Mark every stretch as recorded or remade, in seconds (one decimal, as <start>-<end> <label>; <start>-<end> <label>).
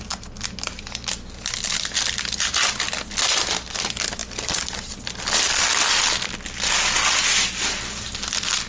0.0-8.7 recorded